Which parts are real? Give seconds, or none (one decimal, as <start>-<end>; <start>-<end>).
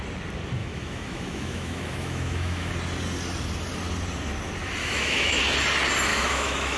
0.0-0.6; 2.7-4.8; 5.4-6.1